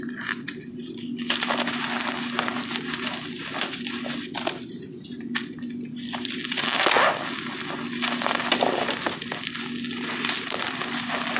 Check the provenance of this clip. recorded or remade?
recorded